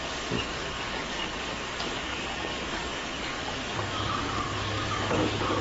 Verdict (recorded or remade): remade